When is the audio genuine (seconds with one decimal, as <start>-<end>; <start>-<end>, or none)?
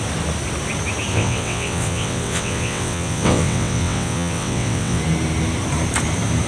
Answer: 0.0-1.1; 5.0-6.5